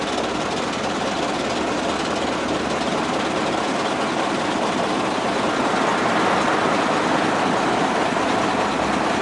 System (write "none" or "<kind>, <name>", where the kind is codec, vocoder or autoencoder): none